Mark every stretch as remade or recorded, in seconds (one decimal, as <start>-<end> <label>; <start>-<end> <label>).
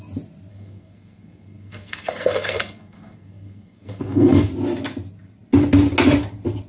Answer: 0.0-0.5 recorded; 0.5-4.5 remade; 4.5-6.7 recorded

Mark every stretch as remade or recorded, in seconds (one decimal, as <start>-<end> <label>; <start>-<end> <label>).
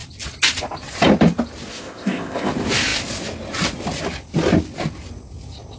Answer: 0.0-1.7 recorded; 1.7-2.5 remade; 2.5-5.8 recorded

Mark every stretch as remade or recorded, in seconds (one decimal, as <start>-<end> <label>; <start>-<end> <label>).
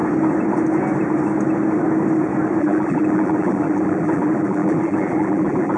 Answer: 0.0-2.6 recorded; 2.6-5.8 remade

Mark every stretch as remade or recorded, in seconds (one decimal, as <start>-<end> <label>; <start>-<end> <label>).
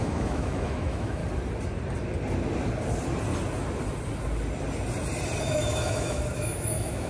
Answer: 0.0-1.2 remade; 1.2-5.4 recorded; 5.4-7.1 remade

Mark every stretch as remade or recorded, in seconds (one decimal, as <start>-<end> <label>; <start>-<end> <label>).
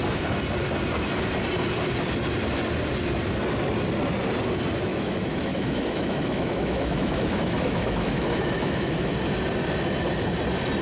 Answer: 0.0-4.9 recorded; 4.9-9.1 remade; 9.1-10.8 recorded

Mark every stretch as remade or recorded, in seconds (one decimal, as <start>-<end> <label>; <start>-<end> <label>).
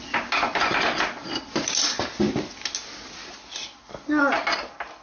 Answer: 0.0-5.0 recorded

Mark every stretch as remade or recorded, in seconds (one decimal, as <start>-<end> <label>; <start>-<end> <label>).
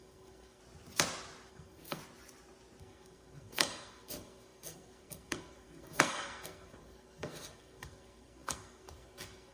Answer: 0.0-0.6 remade; 0.6-1.5 recorded; 1.5-2.0 remade; 2.0-2.8 recorded; 2.8-9.5 remade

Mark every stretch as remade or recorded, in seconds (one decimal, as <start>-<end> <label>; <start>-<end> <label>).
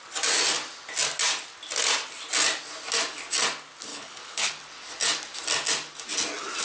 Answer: 0.0-3.9 recorded; 3.9-4.5 remade; 4.5-6.6 recorded